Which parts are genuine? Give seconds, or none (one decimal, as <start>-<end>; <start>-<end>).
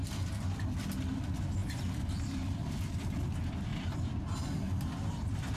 0.0-1.6; 3.1-3.7